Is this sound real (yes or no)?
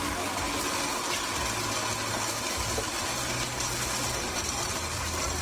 yes